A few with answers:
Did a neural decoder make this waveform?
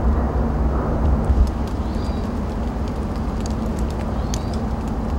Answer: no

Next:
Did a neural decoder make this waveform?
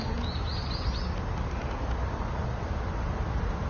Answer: no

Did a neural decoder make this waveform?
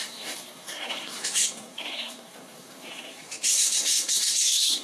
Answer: yes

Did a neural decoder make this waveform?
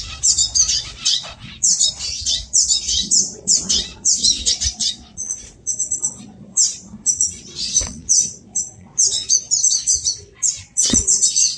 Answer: yes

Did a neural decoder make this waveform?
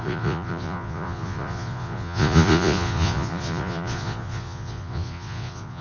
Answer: yes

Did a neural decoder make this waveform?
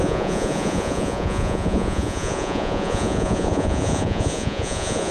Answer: yes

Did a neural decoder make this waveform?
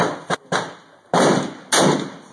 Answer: no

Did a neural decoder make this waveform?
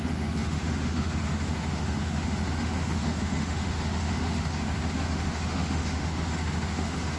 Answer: yes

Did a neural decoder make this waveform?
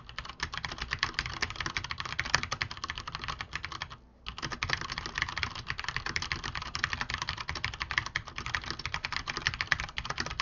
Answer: no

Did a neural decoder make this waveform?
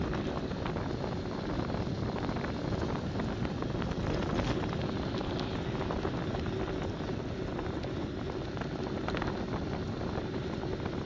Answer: no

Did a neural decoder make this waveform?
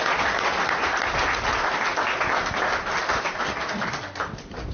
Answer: no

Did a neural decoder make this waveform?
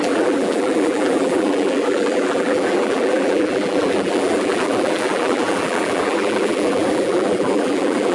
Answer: yes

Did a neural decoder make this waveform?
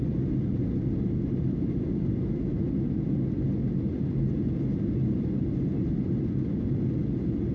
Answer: no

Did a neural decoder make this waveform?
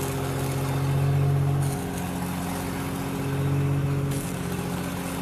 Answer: no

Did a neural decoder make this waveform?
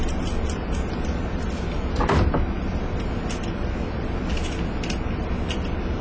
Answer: no